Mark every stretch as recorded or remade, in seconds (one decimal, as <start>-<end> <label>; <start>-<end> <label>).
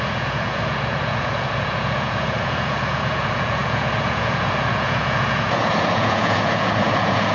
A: 0.0-7.3 remade